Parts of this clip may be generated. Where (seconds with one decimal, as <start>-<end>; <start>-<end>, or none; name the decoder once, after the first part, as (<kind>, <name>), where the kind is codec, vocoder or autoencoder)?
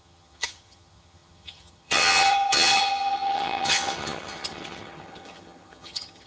0.0-6.3 (vocoder, HiFi-GAN)